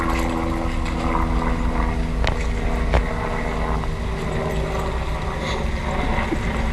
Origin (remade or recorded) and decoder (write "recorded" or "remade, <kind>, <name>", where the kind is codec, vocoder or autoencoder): recorded